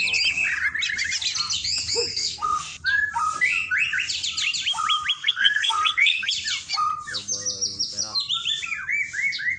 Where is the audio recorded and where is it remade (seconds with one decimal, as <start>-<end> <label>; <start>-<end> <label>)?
0.0-2.1 recorded; 2.1-2.6 remade; 2.6-5.2 recorded; 5.2-6.3 remade; 6.3-9.6 recorded